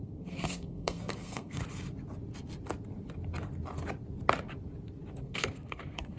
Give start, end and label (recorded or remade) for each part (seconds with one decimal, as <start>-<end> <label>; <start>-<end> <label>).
0.0-1.6 remade; 1.6-5.2 recorded; 5.2-6.2 remade